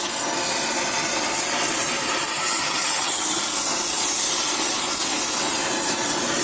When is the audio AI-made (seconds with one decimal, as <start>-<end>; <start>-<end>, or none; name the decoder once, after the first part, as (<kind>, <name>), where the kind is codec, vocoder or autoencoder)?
2.3-3.4 (vocoder, HiFi-GAN)